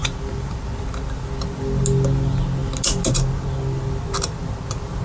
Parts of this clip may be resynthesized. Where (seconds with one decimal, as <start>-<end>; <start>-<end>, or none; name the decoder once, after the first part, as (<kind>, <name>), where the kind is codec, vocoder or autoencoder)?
none